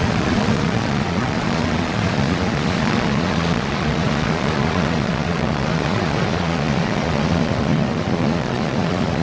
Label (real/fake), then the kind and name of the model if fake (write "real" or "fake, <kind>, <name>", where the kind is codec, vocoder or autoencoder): fake, vocoder, Vocos